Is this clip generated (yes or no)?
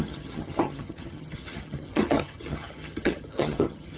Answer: yes